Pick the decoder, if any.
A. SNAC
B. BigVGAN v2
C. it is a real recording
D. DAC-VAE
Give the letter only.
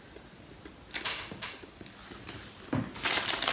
C